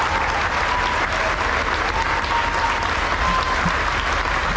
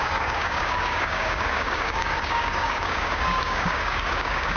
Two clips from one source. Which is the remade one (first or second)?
second